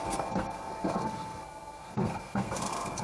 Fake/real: fake